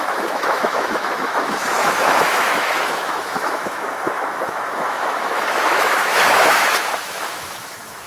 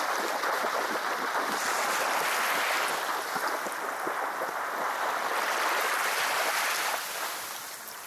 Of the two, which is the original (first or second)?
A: second